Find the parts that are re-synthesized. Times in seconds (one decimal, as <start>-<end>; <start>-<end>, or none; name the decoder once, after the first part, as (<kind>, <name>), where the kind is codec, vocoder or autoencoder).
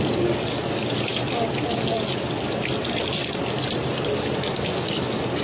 none